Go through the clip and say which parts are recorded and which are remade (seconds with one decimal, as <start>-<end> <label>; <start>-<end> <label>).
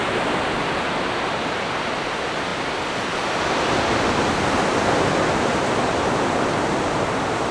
0.0-7.5 recorded